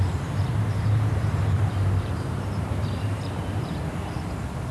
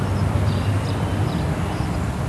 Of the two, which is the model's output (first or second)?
first